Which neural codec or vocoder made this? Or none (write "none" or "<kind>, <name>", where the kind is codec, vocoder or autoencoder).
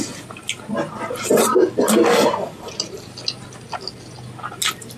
none